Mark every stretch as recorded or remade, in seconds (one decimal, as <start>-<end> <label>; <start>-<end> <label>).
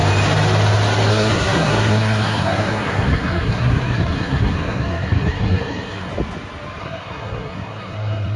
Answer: 0.0-1.1 recorded; 1.1-6.1 remade; 6.1-6.8 recorded; 6.8-8.4 remade